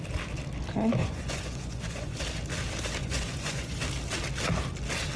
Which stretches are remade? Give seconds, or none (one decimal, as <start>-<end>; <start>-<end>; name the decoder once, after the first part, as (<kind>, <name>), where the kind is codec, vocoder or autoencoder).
1.0-2.2 (vocoder, Vocos); 3.0-3.8